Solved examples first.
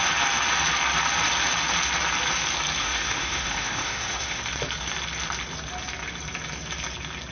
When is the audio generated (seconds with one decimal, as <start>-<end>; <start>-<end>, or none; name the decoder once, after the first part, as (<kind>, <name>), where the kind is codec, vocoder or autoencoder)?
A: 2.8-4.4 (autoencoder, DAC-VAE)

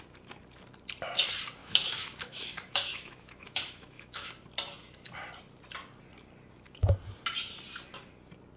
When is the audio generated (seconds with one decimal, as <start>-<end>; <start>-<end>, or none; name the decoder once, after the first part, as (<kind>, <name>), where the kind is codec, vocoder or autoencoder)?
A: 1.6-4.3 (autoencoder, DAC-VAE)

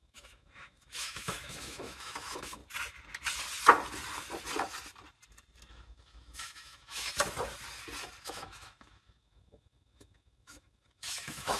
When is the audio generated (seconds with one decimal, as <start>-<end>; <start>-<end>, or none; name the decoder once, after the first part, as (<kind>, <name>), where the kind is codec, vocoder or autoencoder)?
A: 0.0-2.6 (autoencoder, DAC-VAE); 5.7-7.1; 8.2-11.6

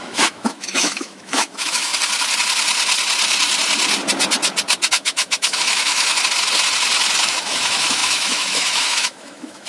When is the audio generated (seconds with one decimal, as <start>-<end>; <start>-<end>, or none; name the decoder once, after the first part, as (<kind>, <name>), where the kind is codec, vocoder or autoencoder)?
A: 0.0-1.9 (autoencoder, DAC-VAE); 4.9-6.1; 7.2-9.7

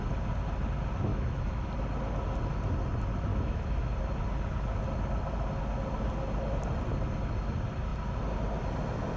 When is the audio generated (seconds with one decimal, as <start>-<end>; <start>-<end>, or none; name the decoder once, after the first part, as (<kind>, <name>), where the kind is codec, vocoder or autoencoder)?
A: 1.1-1.7 (autoencoder, DAC-VAE); 3.3-3.9